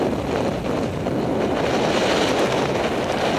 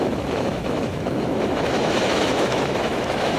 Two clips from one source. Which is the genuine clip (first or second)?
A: first